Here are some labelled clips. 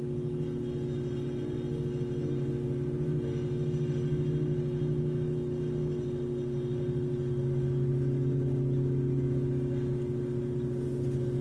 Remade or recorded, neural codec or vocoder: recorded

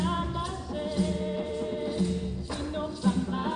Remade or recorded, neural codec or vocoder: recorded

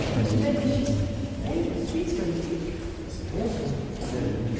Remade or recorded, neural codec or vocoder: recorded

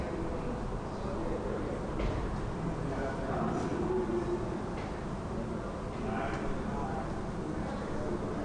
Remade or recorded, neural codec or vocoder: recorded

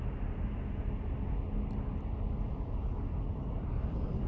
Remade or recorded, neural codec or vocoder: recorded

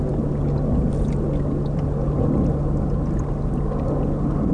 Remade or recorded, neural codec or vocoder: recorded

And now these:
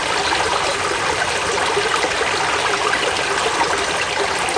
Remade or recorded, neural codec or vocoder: recorded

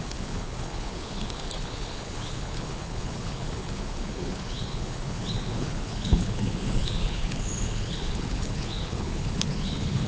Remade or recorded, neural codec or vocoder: remade, codec, HILCodec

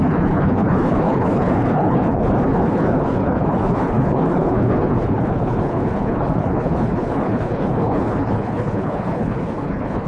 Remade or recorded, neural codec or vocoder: remade, codec, HILCodec